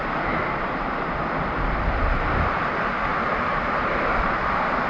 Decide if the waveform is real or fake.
real